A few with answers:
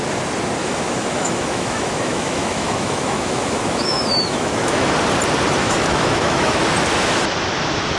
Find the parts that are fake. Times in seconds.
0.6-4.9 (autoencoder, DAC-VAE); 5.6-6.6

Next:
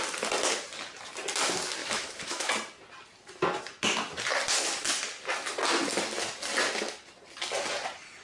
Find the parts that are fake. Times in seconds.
1.8-2.5 (autoencoder, DAC-VAE)